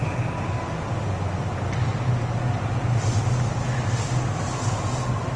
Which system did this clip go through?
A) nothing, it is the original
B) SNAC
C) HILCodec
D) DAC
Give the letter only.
A